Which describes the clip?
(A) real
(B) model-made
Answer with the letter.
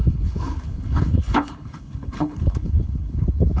B